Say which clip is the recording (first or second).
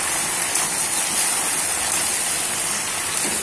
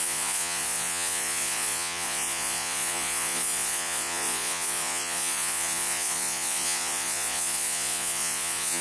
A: first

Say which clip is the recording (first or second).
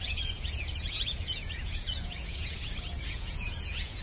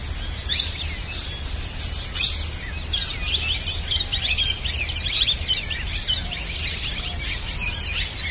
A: second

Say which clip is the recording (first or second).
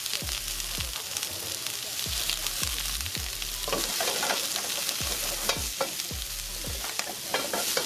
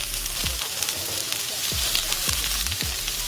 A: first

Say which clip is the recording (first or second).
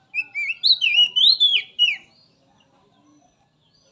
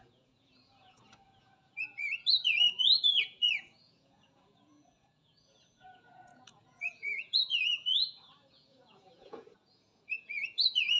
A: first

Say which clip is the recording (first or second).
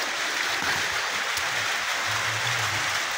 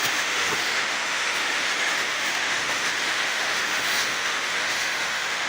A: first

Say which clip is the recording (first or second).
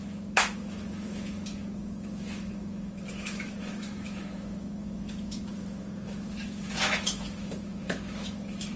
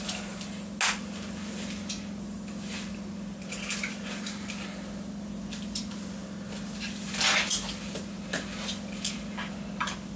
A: second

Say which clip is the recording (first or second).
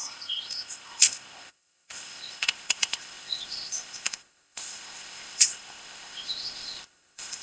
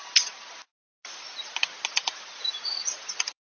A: second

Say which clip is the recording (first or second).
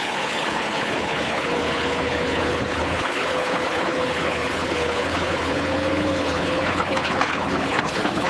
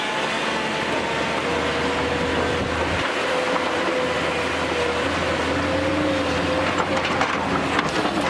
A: second